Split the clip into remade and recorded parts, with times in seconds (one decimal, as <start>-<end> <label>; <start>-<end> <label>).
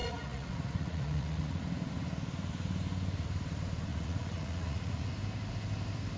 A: 0.0-1.6 remade; 1.6-3.9 recorded; 3.9-5.1 remade; 5.1-6.2 recorded